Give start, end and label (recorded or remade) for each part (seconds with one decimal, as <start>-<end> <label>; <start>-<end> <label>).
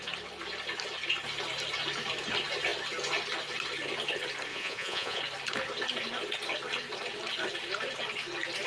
0.0-4.5 recorded; 4.5-5.2 remade; 5.2-8.7 recorded